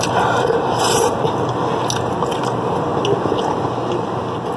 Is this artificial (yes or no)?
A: no